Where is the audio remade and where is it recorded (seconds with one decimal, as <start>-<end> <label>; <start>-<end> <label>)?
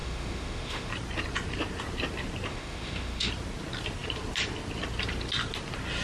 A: 0.0-0.9 remade; 0.9-2.5 recorded; 2.5-3.3 remade; 3.3-6.0 recorded